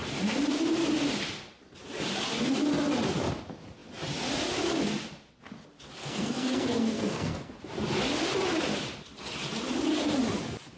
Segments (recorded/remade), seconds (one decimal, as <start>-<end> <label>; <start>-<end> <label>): 0.0-6.0 recorded; 6.0-7.5 remade; 7.5-10.8 recorded